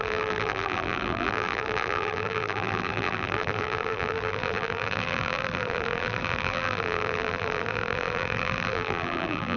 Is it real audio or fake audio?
fake